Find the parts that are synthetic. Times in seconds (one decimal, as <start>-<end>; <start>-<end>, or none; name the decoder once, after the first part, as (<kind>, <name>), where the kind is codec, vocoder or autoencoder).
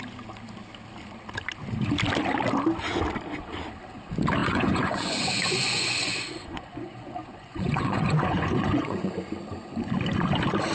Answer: 4.4-9.1 (vocoder, Vocos)